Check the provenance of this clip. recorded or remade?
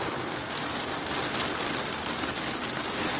recorded